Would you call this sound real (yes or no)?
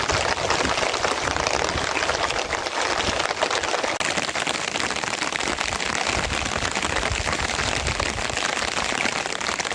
yes